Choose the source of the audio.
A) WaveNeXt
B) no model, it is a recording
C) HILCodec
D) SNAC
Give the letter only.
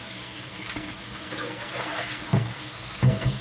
D